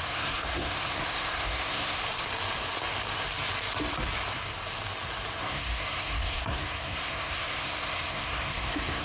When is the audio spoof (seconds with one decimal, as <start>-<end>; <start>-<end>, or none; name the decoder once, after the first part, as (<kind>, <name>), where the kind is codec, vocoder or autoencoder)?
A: 0.0-2.0 (codec, SNAC); 5.4-9.0